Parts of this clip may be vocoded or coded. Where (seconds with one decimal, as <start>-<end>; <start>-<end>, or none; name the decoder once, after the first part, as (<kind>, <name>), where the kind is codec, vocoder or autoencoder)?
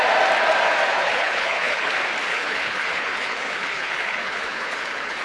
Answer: 0.9-1.9 (codec, HILCodec); 2.3-5.2